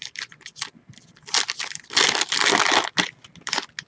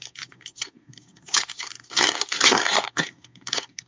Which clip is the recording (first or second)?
first